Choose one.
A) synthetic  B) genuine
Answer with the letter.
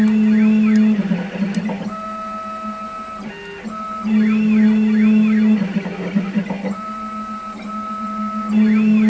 B